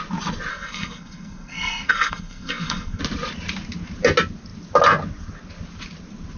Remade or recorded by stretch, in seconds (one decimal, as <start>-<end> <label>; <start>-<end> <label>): 0.0-0.5 recorded; 0.5-3.0 remade; 3.0-6.4 recorded